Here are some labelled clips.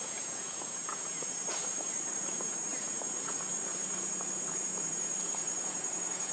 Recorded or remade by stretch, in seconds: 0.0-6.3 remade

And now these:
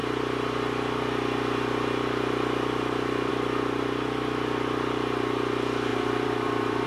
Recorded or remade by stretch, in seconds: 0.0-5.9 recorded; 5.9-6.9 remade

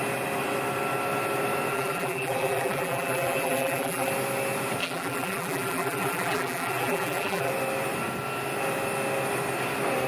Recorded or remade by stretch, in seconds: 0.0-1.7 recorded; 1.7-4.1 remade; 4.1-4.8 recorded; 4.8-7.5 remade; 7.5-10.1 recorded

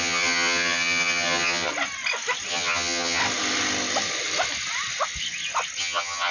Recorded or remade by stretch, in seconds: 0.0-1.7 remade; 1.7-2.5 recorded; 2.5-3.2 remade; 3.2-5.8 recorded; 5.8-6.3 remade

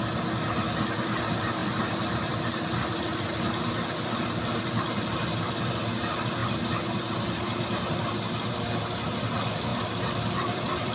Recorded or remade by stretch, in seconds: 0.0-1.6 recorded; 1.6-5.5 remade; 5.5-9.7 recorded; 9.7-10.9 remade

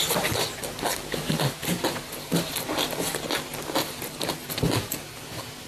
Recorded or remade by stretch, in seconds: 0.0-5.7 recorded

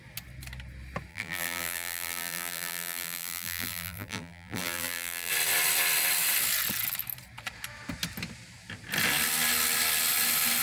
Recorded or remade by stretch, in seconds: 0.0-1.1 recorded; 1.1-5.3 remade; 5.3-10.6 recorded